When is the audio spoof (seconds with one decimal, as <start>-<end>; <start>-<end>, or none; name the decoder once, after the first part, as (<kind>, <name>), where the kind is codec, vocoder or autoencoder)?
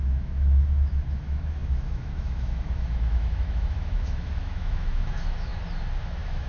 0.0-5.5 (autoencoder, DAC-VAE); 6.0-6.5